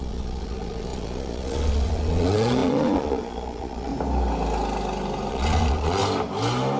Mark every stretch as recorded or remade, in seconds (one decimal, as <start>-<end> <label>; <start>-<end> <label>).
0.0-3.9 remade; 3.9-5.3 recorded; 5.3-6.0 remade; 6.0-6.8 recorded